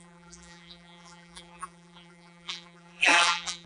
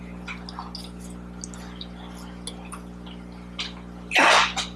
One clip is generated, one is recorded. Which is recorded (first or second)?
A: second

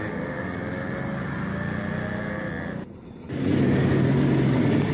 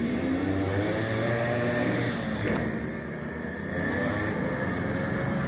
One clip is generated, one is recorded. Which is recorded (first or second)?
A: first